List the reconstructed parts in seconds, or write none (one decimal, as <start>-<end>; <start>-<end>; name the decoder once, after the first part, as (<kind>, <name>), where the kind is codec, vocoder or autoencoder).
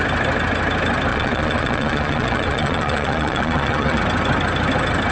1.1-4.0 (vocoder, Vocos)